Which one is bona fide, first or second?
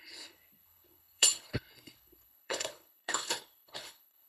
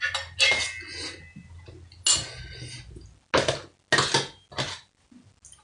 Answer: second